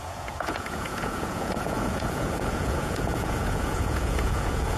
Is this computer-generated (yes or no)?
yes